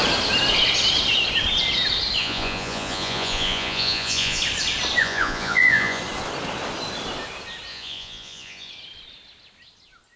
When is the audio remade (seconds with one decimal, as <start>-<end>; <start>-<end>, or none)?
2.2-4.4; 5.0-6.0; 7.7-8.7